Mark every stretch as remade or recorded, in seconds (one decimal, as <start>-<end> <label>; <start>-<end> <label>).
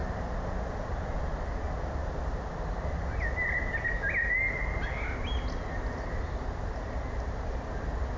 0.0-8.2 recorded